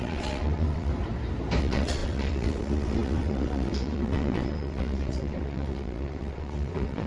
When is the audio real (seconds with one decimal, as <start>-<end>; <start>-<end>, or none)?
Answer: 0.9-1.6